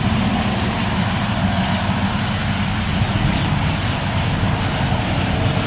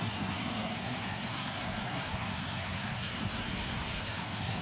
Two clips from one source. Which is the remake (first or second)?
second